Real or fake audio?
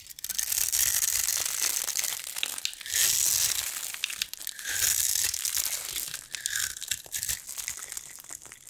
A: real